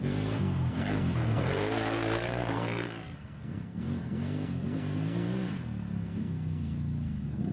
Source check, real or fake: fake